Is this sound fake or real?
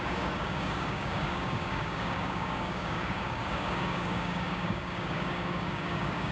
fake